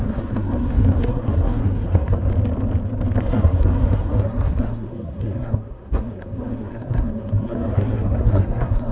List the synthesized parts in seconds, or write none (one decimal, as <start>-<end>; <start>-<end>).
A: 0.0-2.3; 3.2-8.9